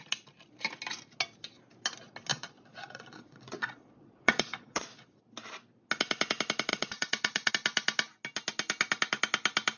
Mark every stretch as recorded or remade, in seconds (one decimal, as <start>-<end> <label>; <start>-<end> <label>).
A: 0.0-2.3 recorded; 2.3-5.2 remade; 5.2-6.7 recorded; 6.7-7.5 remade; 7.5-9.8 recorded